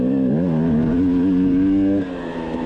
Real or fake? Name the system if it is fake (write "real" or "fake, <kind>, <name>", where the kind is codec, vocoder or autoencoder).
real